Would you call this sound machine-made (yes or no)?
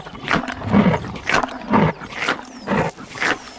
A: no